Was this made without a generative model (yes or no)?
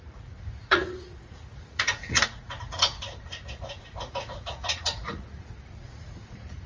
no